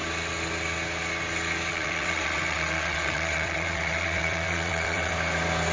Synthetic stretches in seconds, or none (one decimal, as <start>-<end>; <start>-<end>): 1.7-5.1